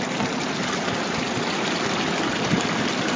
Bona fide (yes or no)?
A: yes